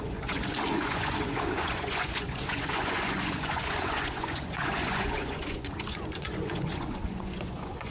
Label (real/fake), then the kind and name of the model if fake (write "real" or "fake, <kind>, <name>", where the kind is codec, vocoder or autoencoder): fake, vocoder, Vocos